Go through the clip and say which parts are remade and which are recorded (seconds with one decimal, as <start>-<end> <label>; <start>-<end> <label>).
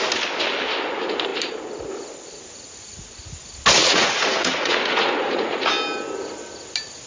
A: 0.0-3.8 recorded; 3.8-5.7 remade; 5.7-7.1 recorded